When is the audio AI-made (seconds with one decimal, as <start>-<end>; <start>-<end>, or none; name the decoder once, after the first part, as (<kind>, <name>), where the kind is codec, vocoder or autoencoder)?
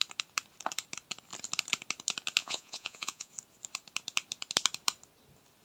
2.4-3.3 (vocoder, Vocos)